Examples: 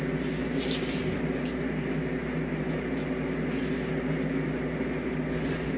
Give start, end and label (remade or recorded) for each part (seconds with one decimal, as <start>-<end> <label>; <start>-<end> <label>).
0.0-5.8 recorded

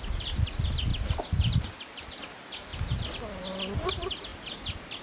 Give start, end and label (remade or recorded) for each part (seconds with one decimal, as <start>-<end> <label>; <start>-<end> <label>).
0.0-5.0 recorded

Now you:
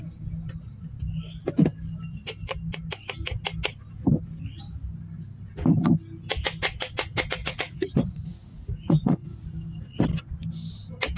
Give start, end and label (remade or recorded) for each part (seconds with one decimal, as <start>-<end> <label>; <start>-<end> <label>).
0.0-7.4 recorded; 7.4-9.5 remade; 9.5-11.2 recorded

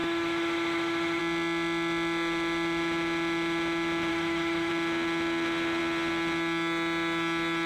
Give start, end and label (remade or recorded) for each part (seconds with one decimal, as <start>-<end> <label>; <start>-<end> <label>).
0.0-1.2 remade; 1.2-4.1 recorded; 4.1-4.7 remade; 4.7-7.7 recorded

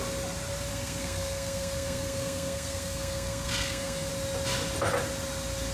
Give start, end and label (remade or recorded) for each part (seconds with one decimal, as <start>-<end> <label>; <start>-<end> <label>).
0.0-0.7 recorded; 0.7-4.1 remade; 4.1-5.7 recorded

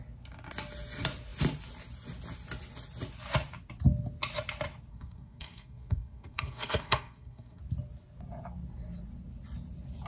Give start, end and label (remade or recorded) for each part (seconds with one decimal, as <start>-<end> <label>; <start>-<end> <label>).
0.0-4.9 recorded; 4.9-7.6 remade; 7.6-10.1 recorded

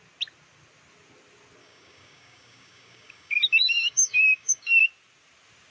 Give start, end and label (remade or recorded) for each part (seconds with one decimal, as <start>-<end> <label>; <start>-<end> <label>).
0.0-1.6 recorded; 1.6-4.9 remade; 4.9-5.7 recorded